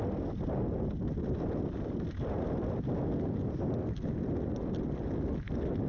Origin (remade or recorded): recorded